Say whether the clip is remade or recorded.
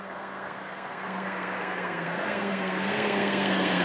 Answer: remade